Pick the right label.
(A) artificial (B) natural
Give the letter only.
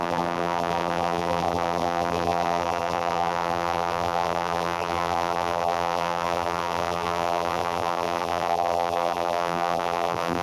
A